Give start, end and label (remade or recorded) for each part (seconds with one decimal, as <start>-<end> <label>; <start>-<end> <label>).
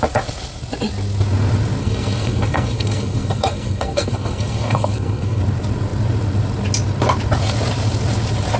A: 0.0-1.8 recorded; 1.8-5.4 remade; 5.4-8.6 recorded